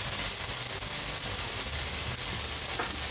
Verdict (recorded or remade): recorded